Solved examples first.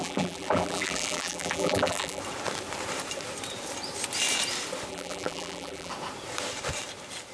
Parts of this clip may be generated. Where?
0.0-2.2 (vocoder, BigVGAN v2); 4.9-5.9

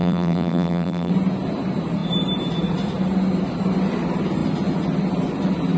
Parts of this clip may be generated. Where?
0.0-1.1 (vocoder, BigVGAN v2)

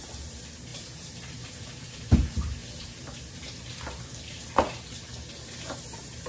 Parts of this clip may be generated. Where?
0.0-6.3 (vocoder, BigVGAN v2)

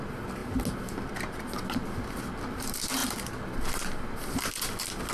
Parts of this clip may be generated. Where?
none

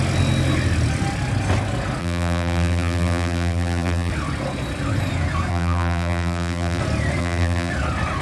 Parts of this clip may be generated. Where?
2.0-4.1 (vocoder, BigVGAN v2); 5.5-6.8; 7.2-7.7

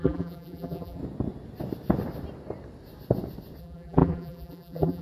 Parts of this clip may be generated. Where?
0.0-1.0 (vocoder, BigVGAN v2); 3.6-5.0